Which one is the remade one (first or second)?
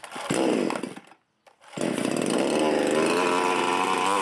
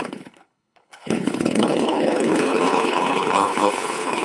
second